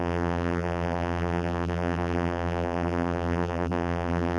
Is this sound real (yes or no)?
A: no